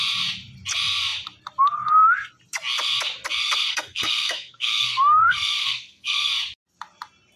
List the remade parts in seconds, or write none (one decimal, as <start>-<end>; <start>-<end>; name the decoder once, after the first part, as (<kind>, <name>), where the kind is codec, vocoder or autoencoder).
3.4-6.3 (codec, SNAC)